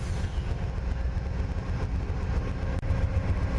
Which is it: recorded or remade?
recorded